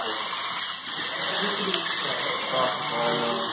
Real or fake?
real